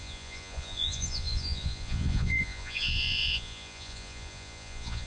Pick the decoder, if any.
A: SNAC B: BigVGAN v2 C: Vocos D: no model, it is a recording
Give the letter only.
C